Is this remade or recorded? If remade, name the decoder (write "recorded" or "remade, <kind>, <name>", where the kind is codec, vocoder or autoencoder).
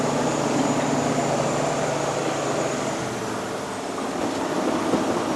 recorded